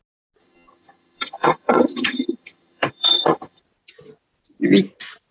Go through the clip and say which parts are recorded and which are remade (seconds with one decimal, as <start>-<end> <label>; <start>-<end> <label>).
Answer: 0.0-0.4 recorded; 0.4-3.6 remade; 3.6-5.3 recorded